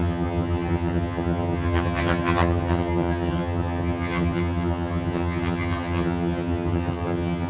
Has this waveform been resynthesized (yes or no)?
yes